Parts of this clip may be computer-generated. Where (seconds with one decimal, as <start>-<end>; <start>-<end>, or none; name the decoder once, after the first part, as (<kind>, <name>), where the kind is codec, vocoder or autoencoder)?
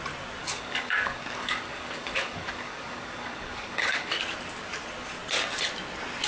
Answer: 0.4-4.2 (codec, DAC)